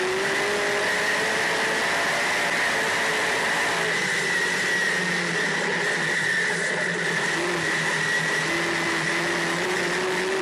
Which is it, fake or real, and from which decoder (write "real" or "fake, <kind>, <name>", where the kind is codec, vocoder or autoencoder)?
real